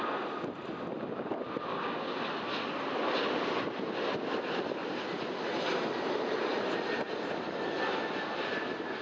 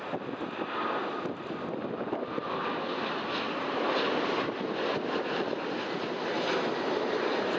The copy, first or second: second